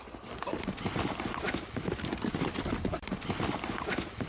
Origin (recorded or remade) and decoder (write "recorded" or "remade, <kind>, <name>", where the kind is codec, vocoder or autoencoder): recorded